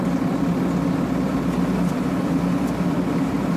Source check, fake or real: real